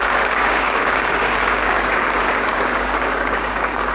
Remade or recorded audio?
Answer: remade